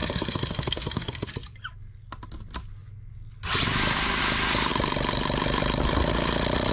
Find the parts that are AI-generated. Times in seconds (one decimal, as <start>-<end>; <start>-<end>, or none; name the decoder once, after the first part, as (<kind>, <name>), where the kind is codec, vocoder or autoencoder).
0.0-1.3 (codec, SNAC)